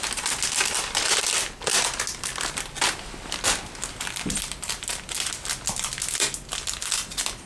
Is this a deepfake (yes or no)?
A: no